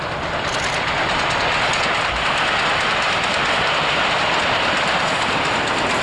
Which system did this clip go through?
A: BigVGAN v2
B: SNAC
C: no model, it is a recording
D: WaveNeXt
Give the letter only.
C